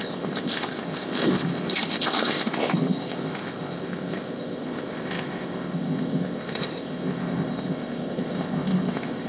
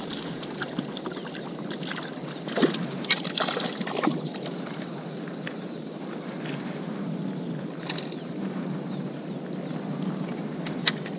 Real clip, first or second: second